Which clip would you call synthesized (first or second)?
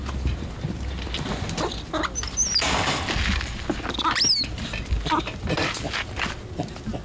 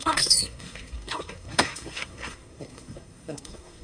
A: second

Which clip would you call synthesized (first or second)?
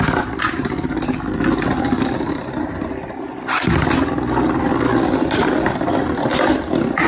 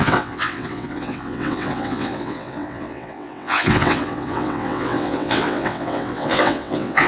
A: second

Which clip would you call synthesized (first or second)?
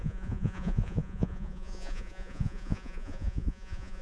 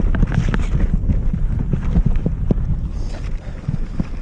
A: first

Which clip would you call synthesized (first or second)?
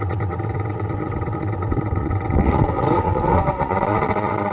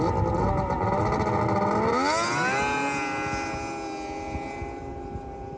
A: first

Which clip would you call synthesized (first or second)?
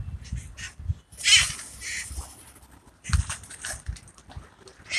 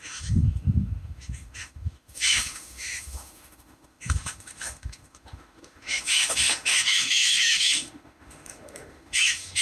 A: second